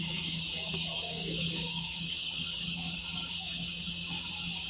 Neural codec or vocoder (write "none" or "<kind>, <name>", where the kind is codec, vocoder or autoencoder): codec, DAC